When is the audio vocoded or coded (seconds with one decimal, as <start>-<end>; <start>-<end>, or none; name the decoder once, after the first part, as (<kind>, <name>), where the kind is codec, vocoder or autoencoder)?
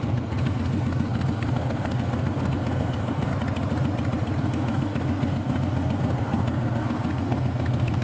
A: 0.0-3.3 (codec, SNAC); 4.4-8.0